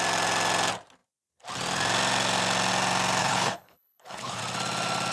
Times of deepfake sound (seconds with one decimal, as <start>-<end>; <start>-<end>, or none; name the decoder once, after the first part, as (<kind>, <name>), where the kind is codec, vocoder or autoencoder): 3.2-4.4 (codec, HILCodec)